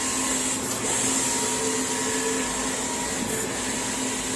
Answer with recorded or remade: recorded